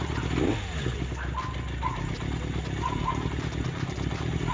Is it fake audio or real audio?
real